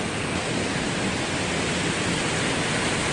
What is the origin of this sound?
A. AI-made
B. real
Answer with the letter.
B